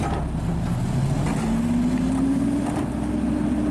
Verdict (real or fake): real